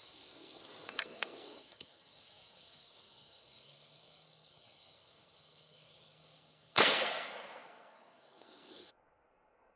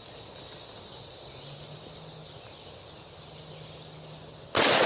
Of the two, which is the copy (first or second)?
first